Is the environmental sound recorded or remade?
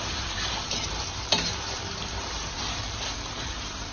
remade